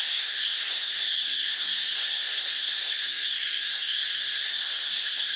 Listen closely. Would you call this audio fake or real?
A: fake